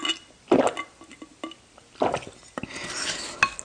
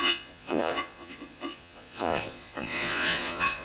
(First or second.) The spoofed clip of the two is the second